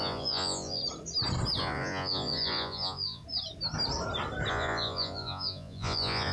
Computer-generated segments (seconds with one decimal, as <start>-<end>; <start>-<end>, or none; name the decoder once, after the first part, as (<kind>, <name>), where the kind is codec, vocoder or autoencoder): 0.0-0.8 (vocoder, Vocos); 1.6-3.2; 4.5-6.3